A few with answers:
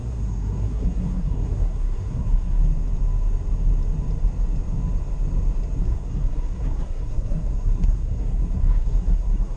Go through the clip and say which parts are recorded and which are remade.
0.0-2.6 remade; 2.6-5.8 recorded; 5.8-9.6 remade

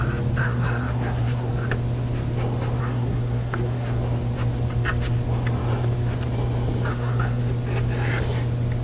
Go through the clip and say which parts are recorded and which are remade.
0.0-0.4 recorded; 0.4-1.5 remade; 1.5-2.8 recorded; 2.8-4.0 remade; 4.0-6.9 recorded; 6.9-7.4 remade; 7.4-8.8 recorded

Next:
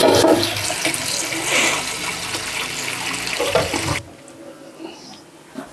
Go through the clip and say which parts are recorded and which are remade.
0.0-5.7 recorded

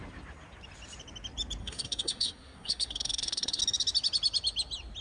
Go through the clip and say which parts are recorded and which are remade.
0.0-1.6 recorded; 1.6-3.6 remade; 3.6-5.0 recorded

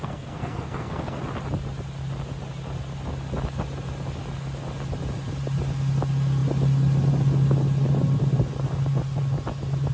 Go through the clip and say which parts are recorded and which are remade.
0.0-1.2 remade; 1.2-9.9 recorded